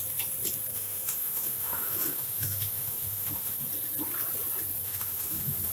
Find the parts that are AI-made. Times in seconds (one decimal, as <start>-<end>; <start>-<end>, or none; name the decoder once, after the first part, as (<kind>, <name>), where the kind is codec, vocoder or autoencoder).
0.7-3.6 (autoencoder, DAC-VAE); 4.8-5.7